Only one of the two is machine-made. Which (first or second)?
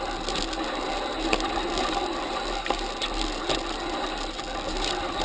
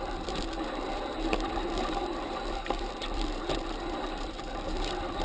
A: second